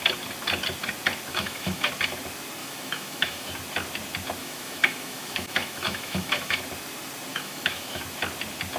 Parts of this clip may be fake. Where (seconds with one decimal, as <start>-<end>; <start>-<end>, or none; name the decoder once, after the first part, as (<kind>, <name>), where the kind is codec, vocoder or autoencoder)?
1.3-1.9 (autoencoder, DAC-VAE); 2.6-3.5; 4.4-6.6; 7.3-8.0